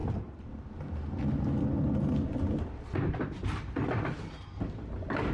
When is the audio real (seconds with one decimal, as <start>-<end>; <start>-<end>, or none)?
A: 0.0-5.3